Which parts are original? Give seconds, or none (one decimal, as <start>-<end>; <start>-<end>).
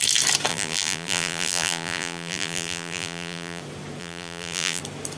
0.0-0.5; 3.6-4.0; 4.8-5.2